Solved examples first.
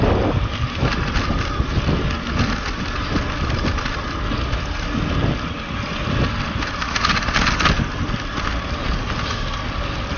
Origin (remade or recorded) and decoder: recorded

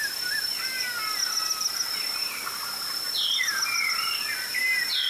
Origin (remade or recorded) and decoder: recorded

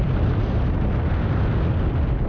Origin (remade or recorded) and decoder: recorded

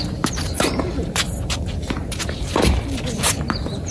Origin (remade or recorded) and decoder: recorded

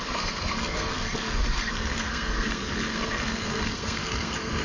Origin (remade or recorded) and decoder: remade, codec, SNAC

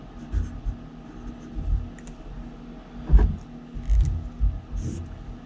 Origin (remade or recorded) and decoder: recorded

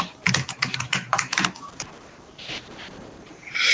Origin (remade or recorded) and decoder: remade, vocoder, BigVGAN v2